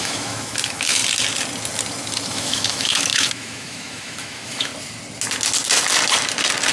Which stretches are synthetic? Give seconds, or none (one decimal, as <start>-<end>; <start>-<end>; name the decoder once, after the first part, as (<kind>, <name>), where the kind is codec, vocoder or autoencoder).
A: 0.0-1.0 (autoencoder, DAC-VAE); 2.3-4.7